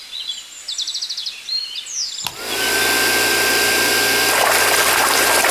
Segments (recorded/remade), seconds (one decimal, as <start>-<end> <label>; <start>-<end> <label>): 0.0-5.5 recorded